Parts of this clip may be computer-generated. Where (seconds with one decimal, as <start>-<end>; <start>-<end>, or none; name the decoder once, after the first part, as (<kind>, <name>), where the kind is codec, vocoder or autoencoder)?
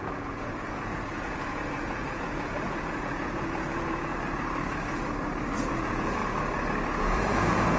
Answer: 0.0-4.1 (vocoder, Vocos); 5.7-6.2; 7.0-7.8